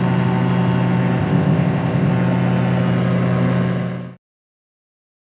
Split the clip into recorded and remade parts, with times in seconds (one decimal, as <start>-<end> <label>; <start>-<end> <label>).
0.0-1.2 recorded; 1.2-2.1 remade; 2.1-5.2 recorded